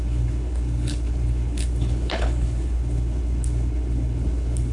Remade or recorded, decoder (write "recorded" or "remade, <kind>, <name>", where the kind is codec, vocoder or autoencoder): remade, codec, HILCodec